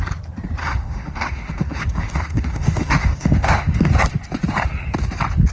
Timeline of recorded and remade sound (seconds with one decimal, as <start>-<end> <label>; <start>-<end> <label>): 0.0-0.6 recorded; 0.6-3.9 remade; 3.9-5.5 recorded